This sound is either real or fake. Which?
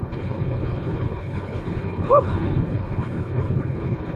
fake